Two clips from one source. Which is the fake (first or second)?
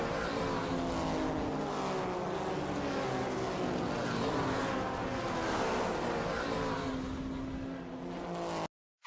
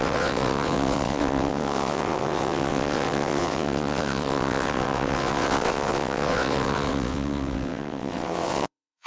second